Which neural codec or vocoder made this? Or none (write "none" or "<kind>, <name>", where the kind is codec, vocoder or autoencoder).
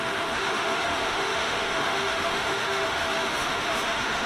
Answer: autoencoder, DAC-VAE